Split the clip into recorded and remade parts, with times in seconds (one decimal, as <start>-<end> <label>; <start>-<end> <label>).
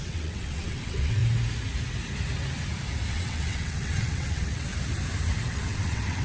0.0-1.2 remade; 1.2-3.1 recorded; 3.1-4.7 remade; 4.7-5.4 recorded; 5.4-6.2 remade